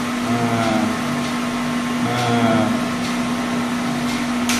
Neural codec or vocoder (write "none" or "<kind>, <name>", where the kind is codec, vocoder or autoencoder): none